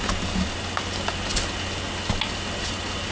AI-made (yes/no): no